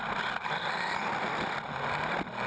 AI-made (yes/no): no